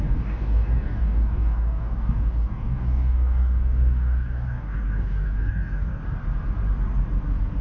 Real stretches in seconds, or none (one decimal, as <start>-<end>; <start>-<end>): 6.0-7.6